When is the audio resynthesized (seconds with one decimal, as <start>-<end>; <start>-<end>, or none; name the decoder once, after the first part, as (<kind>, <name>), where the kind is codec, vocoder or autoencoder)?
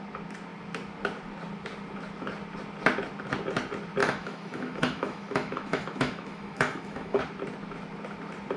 4.0-7.2 (autoencoder, DAC-VAE)